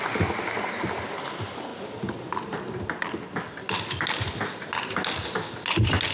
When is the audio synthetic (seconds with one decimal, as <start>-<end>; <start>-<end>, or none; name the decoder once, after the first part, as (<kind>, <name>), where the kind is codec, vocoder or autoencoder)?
none